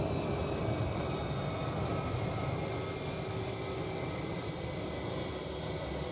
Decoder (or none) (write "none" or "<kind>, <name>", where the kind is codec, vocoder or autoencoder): none